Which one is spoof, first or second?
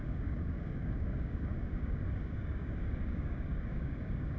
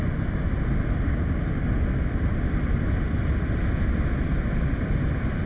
first